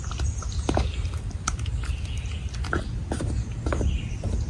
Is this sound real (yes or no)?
yes